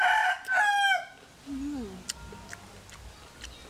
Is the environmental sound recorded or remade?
recorded